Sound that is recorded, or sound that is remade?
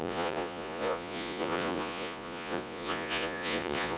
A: remade